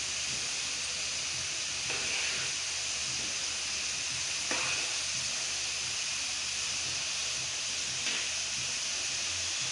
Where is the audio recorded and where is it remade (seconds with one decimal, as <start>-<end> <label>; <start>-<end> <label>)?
0.0-9.7 recorded